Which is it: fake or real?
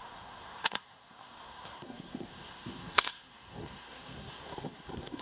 fake